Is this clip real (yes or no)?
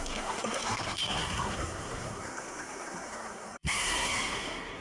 no